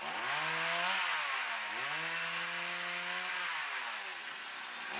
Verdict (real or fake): real